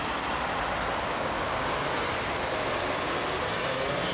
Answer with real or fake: real